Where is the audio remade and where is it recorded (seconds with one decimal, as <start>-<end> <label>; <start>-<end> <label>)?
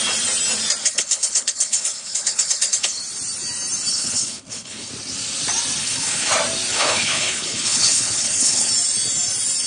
0.0-0.8 recorded; 0.8-3.0 remade; 3.0-3.9 recorded; 3.9-4.9 remade; 4.9-5.8 recorded; 5.8-6.3 remade; 6.3-6.7 recorded; 6.7-8.7 remade; 8.7-9.7 recorded